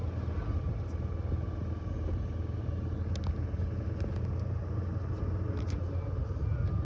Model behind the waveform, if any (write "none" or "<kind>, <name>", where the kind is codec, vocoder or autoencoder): none